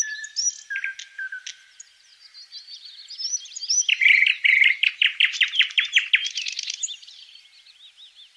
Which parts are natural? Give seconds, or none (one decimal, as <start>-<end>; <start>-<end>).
0.0-3.3; 6.1-8.4